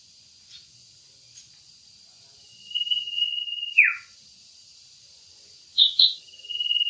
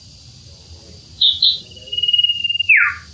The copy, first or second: first